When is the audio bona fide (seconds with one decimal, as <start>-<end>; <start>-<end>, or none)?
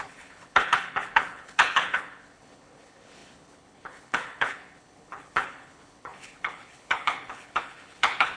none